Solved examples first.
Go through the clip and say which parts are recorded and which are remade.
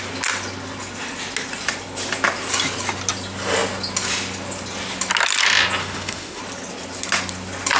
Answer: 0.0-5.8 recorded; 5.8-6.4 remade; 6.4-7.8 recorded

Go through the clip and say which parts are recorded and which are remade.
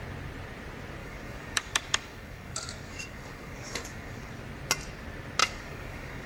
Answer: 0.0-1.0 recorded; 1.0-4.3 remade; 4.3-5.4 recorded; 5.4-6.3 remade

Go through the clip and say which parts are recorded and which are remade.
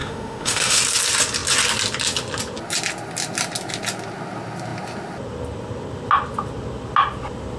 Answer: 0.0-0.8 remade; 0.8-7.6 recorded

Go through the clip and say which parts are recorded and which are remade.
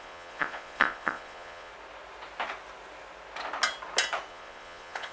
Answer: 0.0-1.7 remade; 1.7-4.3 recorded; 4.3-5.1 remade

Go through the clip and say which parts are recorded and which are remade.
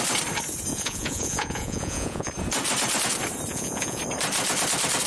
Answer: 0.0-0.7 recorded; 0.7-2.3 remade; 2.3-3.5 recorded; 3.5-4.0 remade; 4.0-5.1 recorded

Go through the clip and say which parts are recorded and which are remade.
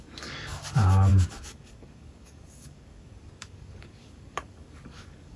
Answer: 0.0-5.4 remade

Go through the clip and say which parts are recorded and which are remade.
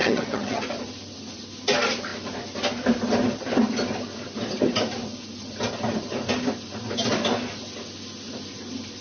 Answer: 0.0-0.6 remade; 0.6-9.0 recorded